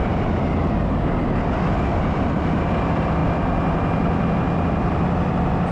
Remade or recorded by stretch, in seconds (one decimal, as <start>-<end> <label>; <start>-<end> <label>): 0.0-5.7 recorded